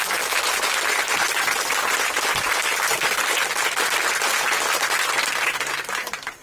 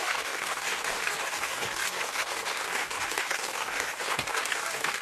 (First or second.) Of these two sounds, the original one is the first